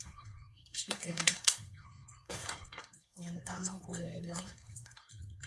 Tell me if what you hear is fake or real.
fake